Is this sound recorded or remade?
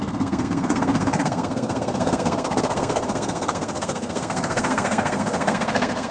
remade